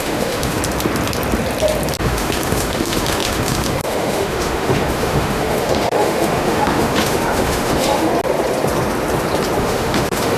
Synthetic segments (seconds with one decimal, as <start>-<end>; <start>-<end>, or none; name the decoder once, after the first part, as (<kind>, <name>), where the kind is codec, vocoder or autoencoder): 0.0-0.6 (autoencoder, DAC-VAE); 2.0-8.1; 9.6-10.4

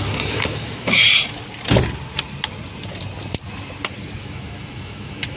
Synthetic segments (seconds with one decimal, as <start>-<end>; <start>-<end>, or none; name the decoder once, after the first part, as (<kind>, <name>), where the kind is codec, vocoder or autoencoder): 0.0-1.0 (autoencoder, DAC-VAE); 4.2-5.4

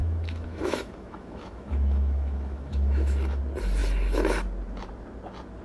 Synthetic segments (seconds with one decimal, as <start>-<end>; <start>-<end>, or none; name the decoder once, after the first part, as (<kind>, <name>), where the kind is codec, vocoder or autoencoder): 0.0-3.4 (autoencoder, DAC-VAE)